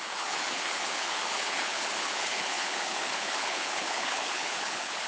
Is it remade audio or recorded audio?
remade